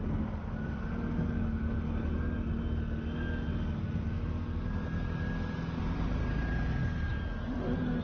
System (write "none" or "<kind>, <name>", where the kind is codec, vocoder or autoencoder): none